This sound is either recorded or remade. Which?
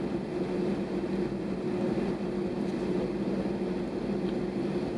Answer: recorded